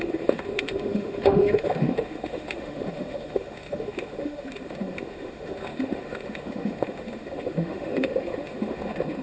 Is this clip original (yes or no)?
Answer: no